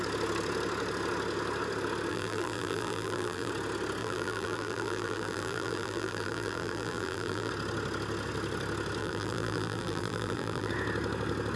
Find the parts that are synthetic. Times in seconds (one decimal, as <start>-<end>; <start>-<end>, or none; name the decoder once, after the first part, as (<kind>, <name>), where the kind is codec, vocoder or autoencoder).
2.1-3.5 (vocoder, BigVGAN v2); 4.0-7.5; 9.0-10.7